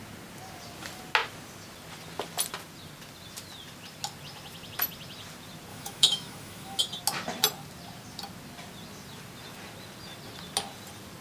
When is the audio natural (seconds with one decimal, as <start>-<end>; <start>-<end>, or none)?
0.0-5.7; 6.8-11.2